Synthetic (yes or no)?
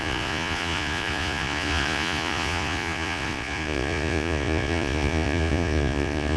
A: yes